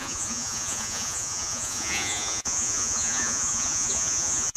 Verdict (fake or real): fake